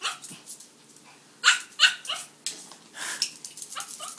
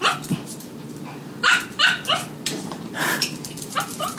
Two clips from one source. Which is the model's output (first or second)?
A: second